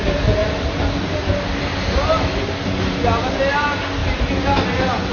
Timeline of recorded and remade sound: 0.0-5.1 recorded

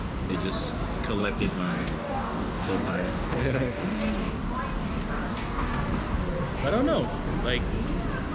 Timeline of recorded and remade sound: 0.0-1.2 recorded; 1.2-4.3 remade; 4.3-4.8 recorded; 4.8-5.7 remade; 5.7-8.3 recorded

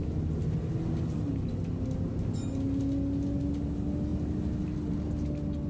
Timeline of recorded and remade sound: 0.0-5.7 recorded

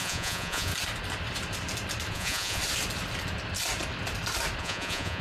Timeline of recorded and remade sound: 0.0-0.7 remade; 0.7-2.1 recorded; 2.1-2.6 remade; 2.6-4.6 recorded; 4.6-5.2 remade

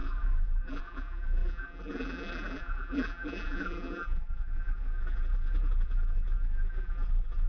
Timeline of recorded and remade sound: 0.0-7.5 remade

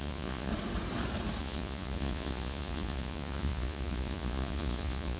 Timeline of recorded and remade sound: 0.0-0.5 remade; 0.5-1.4 recorded; 1.4-5.2 remade

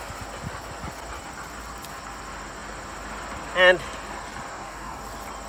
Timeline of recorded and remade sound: 0.0-4.5 recorded; 4.5-5.0 remade; 5.0-5.5 recorded

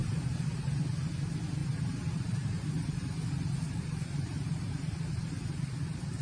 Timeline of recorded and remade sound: 0.0-0.8 remade; 0.8-1.6 recorded; 1.6-5.3 remade; 5.3-6.2 recorded